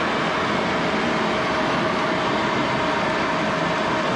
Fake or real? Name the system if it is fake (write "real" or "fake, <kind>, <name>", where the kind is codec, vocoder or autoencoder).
real